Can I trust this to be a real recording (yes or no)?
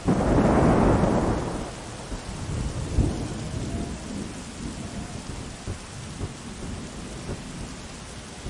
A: yes